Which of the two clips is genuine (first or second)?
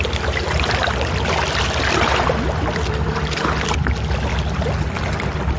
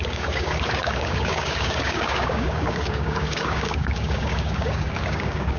first